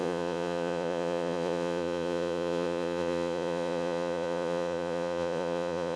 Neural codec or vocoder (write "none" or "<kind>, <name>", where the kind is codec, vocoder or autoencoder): vocoder, Vocos